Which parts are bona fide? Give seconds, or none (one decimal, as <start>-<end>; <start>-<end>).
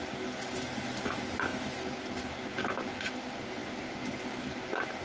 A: 0.0-5.0